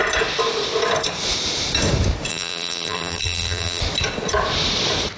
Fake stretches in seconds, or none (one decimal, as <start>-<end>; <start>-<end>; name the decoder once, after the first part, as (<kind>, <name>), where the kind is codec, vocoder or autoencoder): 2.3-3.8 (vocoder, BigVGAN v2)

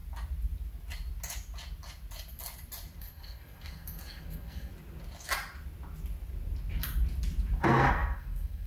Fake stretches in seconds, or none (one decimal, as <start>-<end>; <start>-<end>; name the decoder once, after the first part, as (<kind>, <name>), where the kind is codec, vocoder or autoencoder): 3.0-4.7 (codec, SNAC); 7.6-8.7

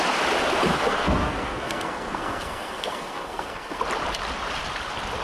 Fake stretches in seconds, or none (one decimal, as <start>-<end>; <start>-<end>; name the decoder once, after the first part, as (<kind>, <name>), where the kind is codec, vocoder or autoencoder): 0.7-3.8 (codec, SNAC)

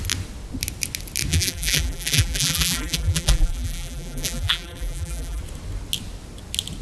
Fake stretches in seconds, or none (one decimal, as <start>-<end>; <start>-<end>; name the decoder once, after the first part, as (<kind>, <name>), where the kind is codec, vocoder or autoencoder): 1.3-5.4 (vocoder, BigVGAN v2)

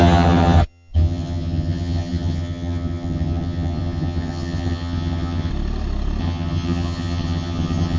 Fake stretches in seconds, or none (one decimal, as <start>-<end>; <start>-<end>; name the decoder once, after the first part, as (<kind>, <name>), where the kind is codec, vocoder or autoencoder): 0.0-5.5 (vocoder, HiFi-GAN); 6.2-8.0

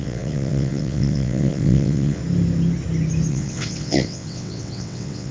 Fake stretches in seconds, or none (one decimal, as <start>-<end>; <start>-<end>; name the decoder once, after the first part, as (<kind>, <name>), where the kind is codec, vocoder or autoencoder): 0.0-2.2 (vocoder, WaveNeXt); 3.3-5.3